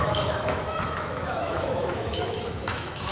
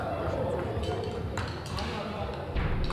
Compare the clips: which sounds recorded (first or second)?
second